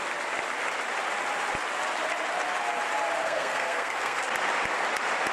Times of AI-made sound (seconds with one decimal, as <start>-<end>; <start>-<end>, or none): 3.2-4.2